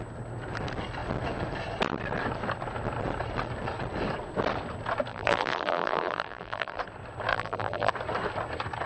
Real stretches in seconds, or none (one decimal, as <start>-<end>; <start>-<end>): 0.0-5.1; 6.8-7.3; 7.9-8.9

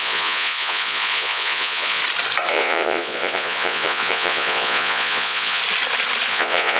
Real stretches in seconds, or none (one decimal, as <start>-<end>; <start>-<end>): 2.0-2.5; 5.6-6.3

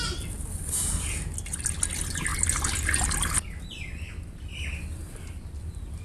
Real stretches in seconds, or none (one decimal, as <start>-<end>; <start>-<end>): 0.0-6.0

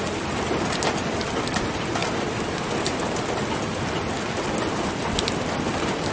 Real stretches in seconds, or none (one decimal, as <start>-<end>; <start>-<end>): 0.0-6.1

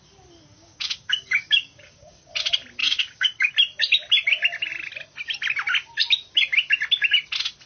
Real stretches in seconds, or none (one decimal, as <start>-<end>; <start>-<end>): 0.0-0.5; 2.3-2.8; 3.5-7.7

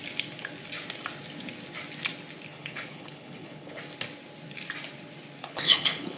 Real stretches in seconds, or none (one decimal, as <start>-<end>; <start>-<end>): 0.0-2.5; 3.8-5.4

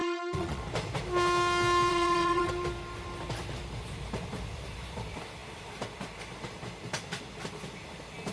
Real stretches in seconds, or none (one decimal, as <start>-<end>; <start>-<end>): 0.6-1.9; 2.5-8.3